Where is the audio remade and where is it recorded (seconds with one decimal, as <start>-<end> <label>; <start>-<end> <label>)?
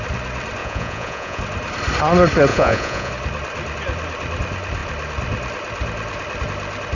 0.0-0.6 recorded; 0.6-1.4 remade; 1.4-2.5 recorded; 2.5-3.1 remade; 3.1-6.9 recorded